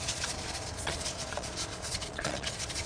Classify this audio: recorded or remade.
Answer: remade